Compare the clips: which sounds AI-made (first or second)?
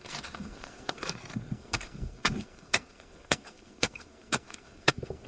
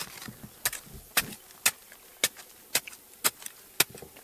first